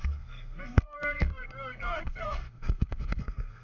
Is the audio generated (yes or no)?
yes